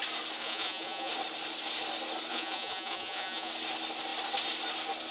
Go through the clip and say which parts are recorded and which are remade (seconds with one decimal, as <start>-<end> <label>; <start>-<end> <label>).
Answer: 0.0-0.4 recorded; 0.4-1.1 remade; 1.1-2.3 recorded; 2.3-3.5 remade; 3.5-5.1 recorded